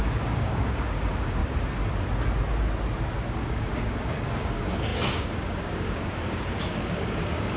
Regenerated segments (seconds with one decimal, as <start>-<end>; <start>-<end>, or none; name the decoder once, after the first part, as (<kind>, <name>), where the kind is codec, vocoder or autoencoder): 0.0-1.4 (codec, DAC); 3.3-7.6